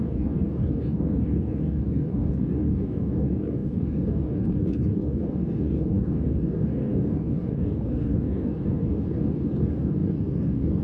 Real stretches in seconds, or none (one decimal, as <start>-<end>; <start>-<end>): none